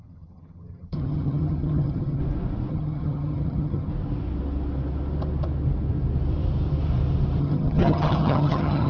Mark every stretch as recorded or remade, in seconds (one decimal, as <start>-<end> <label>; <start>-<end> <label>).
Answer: 0.0-2.2 remade; 2.2-2.7 recorded; 2.7-3.9 remade; 3.9-7.4 recorded; 7.4-8.9 remade